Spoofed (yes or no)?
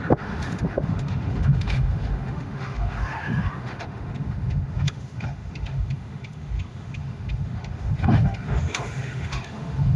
yes